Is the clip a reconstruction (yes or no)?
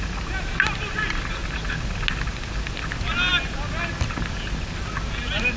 no